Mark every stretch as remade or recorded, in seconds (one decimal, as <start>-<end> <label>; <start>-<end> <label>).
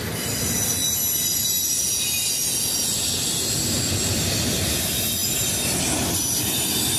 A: 0.0-0.8 remade; 0.8-4.5 recorded; 4.5-5.2 remade; 5.2-6.0 recorded; 6.0-7.0 remade